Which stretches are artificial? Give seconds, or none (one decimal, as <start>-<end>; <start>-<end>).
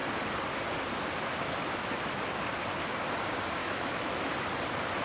3.6-4.3